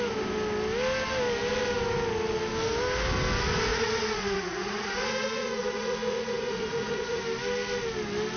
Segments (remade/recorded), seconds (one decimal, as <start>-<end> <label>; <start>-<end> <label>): 0.0-3.7 recorded; 3.7-7.2 remade; 7.2-8.4 recorded